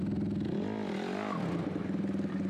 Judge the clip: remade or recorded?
recorded